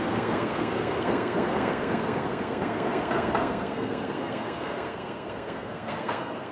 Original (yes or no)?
no